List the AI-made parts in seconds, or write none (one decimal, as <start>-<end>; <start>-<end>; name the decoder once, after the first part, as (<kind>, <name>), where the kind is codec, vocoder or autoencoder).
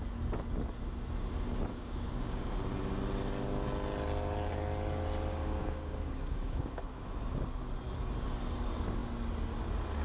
1.7-2.5 (codec, DAC); 5.3-6.8